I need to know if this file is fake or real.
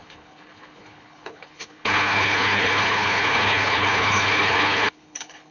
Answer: fake